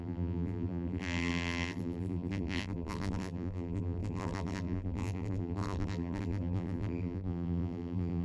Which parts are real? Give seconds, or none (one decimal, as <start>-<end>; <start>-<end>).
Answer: none